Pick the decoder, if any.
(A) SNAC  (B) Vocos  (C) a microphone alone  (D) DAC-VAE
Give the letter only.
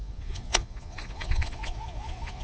B